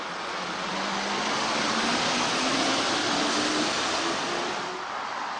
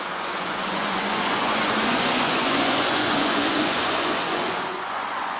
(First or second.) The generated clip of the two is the second